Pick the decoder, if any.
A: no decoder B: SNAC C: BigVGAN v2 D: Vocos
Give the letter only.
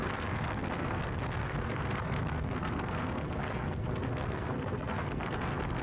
B